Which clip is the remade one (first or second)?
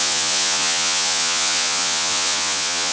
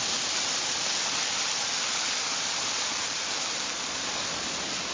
first